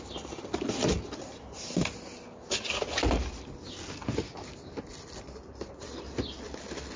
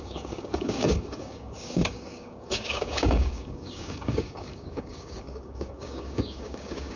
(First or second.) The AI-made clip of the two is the second